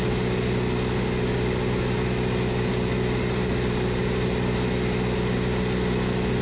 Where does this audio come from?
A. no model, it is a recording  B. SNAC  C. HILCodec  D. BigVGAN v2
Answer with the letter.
A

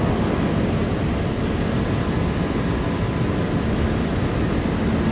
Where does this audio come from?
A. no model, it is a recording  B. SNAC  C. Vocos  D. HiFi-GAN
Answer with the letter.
A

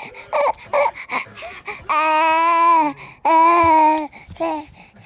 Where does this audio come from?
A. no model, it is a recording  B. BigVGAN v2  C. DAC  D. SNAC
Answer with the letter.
A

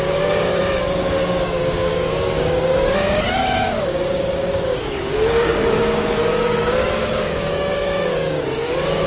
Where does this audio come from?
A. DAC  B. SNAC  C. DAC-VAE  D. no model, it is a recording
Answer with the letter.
A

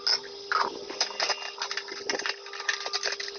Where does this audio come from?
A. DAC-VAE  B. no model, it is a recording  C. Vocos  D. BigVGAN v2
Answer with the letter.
B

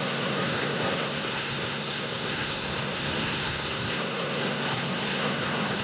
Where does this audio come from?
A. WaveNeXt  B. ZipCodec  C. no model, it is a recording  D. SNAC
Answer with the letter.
D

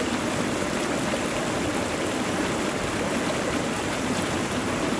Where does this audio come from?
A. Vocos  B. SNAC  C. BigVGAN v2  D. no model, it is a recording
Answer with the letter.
D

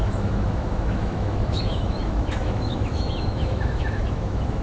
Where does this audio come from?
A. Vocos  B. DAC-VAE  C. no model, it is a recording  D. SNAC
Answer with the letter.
B